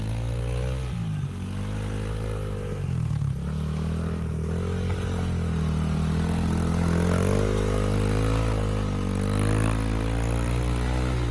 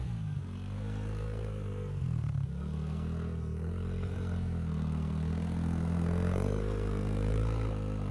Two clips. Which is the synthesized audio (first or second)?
second